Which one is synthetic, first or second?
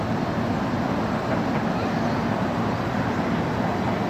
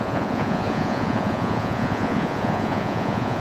second